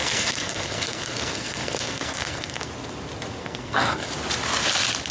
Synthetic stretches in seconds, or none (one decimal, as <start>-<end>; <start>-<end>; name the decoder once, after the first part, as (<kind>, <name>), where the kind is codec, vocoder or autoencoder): 0.0-2.7 (codec, SNAC); 3.4-4.1